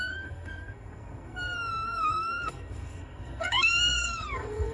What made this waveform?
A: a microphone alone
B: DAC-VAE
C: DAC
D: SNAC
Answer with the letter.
D